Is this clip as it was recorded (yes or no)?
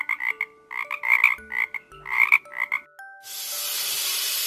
yes